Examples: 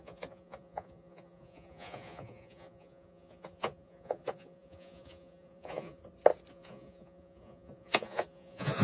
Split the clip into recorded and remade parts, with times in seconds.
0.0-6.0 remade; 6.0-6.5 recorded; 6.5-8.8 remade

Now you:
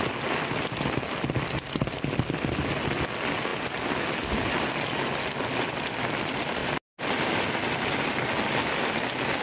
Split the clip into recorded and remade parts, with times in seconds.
0.0-9.4 recorded